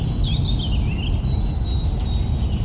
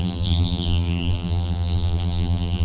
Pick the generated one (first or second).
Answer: second